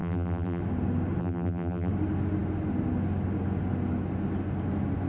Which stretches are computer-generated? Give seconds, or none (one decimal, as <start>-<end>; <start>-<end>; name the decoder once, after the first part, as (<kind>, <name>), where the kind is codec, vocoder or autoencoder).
0.0-0.6 (vocoder, BigVGAN v2); 1.2-1.9